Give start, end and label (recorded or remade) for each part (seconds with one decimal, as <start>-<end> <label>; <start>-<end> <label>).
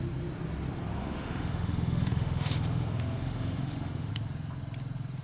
0.0-1.0 recorded; 1.0-4.1 remade; 4.1-5.2 recorded